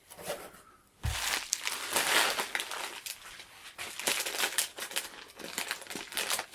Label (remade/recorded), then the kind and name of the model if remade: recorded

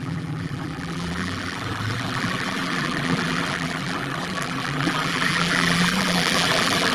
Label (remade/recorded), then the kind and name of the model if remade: remade, vocoder, BigVGAN v2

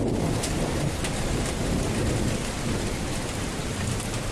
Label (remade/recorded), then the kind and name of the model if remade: recorded